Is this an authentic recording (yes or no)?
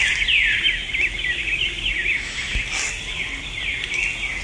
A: yes